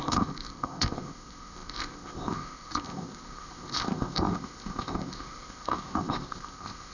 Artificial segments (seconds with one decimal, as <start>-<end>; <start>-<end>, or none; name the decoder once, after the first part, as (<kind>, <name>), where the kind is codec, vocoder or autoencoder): 0.0-6.9 (codec, ZipCodec)